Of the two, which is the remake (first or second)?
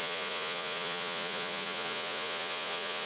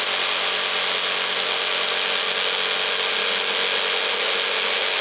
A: first